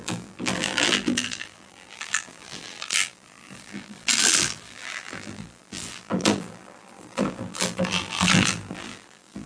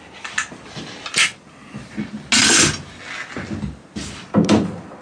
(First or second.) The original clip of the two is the second